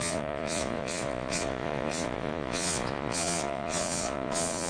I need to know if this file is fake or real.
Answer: fake